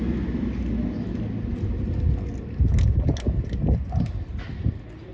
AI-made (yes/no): no